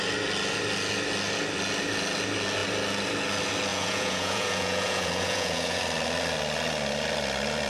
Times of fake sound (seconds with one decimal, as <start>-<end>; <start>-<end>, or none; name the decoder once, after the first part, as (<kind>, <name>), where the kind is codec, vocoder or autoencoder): 3.7-5.8 (vocoder, Vocos)